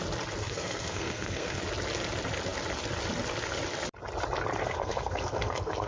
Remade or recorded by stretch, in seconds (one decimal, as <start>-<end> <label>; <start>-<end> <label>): 0.0-0.4 recorded; 0.4-1.6 remade; 1.6-4.6 recorded; 4.6-5.9 remade